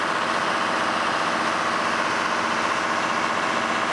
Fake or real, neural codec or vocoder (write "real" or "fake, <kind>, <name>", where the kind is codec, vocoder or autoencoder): real